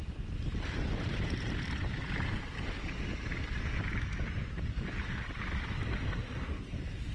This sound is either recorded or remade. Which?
recorded